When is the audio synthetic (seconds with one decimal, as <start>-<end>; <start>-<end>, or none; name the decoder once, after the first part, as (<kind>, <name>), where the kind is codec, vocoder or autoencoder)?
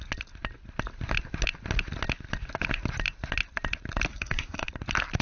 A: 4.1-4.7 (codec, SNAC)